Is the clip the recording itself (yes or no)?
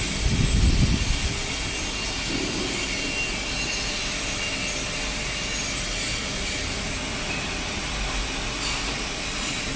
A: yes